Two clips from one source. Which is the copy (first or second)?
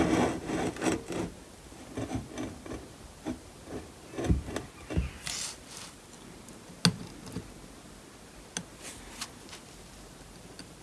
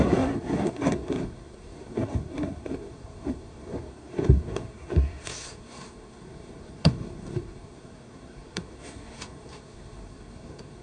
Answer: second